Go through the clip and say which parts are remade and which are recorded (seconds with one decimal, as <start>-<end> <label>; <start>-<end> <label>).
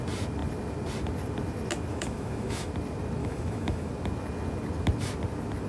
0.0-1.9 recorded; 1.9-2.7 remade; 2.7-3.2 recorded; 3.2-3.9 remade; 3.9-5.7 recorded